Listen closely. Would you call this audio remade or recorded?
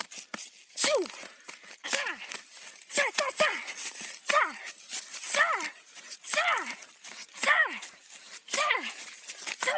recorded